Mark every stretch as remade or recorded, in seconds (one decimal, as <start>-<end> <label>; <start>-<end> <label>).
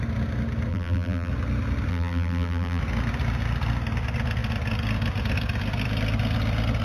0.0-0.7 recorded; 0.7-1.3 remade; 1.3-1.9 recorded; 1.9-2.8 remade; 2.8-6.8 recorded